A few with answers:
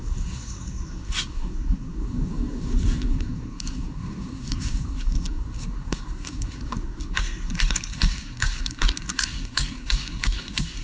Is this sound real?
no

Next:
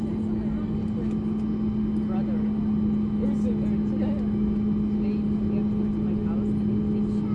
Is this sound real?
yes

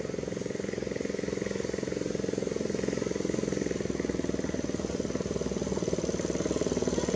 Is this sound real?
yes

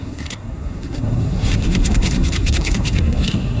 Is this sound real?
no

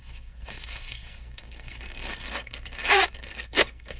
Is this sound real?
no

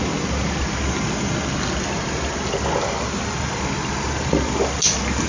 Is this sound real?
yes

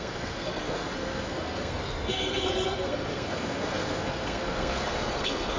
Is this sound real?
no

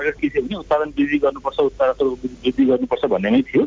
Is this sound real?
yes